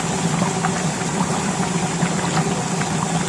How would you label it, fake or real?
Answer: real